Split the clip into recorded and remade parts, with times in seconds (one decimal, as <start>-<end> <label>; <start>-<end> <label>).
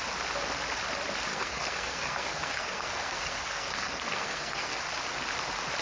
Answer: 0.0-1.3 recorded; 1.3-4.8 remade; 4.8-5.8 recorded